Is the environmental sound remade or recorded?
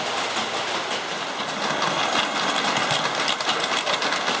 recorded